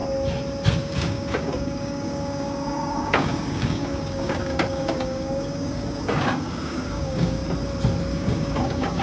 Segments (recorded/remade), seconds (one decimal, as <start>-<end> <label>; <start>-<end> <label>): 0.0-0.8 recorded; 0.8-7.4 remade; 7.4-8.0 recorded; 8.0-9.0 remade